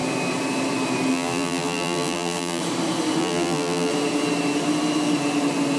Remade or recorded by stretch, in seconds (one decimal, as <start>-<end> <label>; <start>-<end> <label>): 0.0-1.1 recorded; 1.1-2.6 remade; 2.6-3.2 recorded; 3.2-3.9 remade; 3.9-5.8 recorded